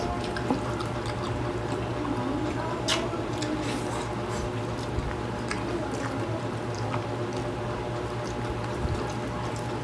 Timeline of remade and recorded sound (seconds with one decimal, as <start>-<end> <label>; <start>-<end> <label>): 0.0-9.8 recorded